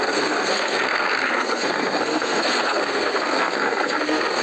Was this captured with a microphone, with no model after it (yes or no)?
no